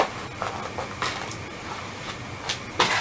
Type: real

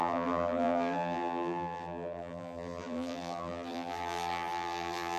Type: fake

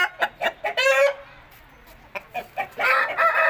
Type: real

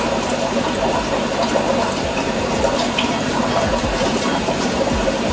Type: fake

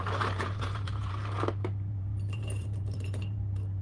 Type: fake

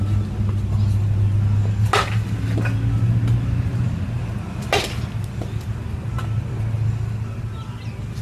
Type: real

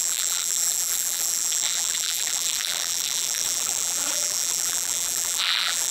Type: fake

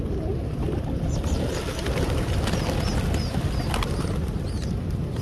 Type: real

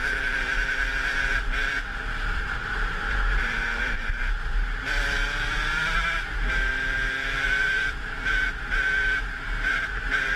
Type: fake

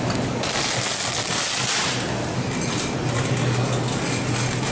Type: real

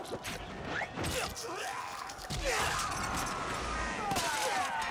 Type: real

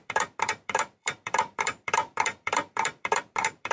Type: fake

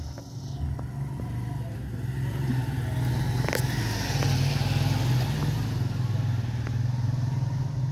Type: real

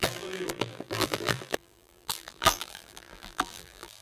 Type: fake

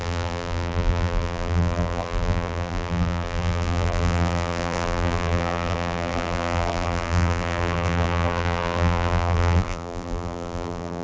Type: fake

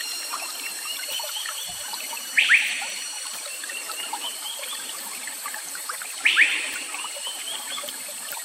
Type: fake